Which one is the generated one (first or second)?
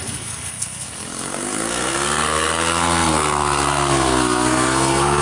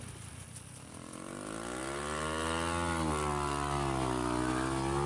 first